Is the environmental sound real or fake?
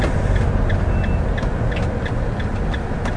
real